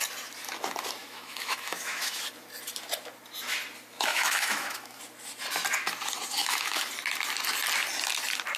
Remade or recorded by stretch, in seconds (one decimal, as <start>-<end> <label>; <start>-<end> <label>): 0.0-1.0 recorded; 1.0-2.2 remade; 2.2-4.1 recorded; 4.1-5.0 remade; 5.0-6.4 recorded; 6.4-6.9 remade; 6.9-8.6 recorded